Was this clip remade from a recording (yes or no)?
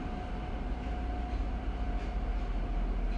no